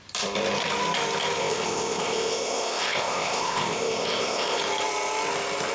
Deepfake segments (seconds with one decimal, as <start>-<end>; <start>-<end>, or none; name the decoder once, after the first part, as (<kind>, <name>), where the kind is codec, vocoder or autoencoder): 1.4-4.6 (codec, ZipCodec)